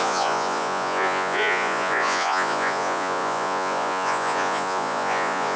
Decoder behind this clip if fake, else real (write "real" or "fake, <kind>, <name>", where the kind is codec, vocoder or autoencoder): fake, vocoder, Vocos